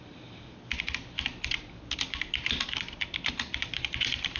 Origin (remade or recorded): recorded